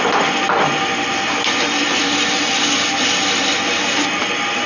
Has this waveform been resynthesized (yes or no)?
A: no